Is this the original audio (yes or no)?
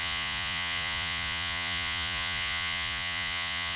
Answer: no